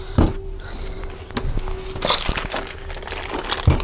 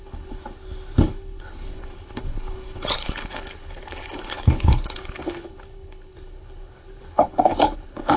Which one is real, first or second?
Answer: first